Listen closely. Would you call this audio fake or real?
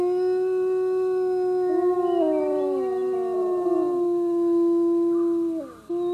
real